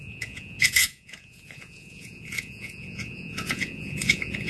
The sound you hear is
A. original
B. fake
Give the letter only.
B